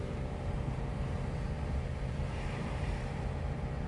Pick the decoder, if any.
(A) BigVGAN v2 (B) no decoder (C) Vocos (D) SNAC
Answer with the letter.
A